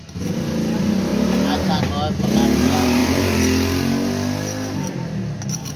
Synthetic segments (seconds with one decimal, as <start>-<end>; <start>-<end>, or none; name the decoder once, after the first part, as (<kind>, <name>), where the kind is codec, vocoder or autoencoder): none

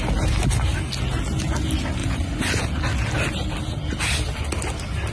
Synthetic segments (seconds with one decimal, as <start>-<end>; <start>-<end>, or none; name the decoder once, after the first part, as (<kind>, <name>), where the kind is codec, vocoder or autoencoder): 2.0-2.6 (vocoder, Vocos)

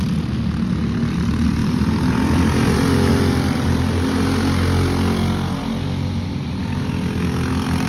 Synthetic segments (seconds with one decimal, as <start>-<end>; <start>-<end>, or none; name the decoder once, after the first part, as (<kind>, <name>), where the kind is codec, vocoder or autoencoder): none

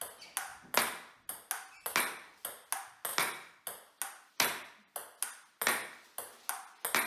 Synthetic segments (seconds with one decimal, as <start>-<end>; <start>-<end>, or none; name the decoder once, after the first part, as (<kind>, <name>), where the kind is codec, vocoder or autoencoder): none

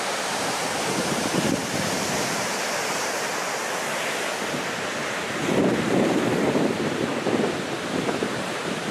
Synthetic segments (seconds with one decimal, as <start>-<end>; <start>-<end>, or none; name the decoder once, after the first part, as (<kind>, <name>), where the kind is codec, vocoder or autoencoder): 0.0-3.3 (vocoder, BigVGAN v2); 5.7-7.1; 7.9-8.9

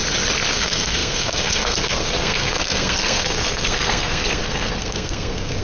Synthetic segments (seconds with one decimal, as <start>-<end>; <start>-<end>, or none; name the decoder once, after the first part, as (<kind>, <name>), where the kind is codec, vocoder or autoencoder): 0.5-5.6 (codec, SNAC)

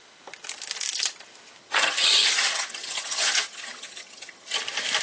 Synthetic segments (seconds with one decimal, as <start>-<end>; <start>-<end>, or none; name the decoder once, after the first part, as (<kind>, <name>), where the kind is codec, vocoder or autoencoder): 1.6-4.6 (vocoder, HiFi-GAN)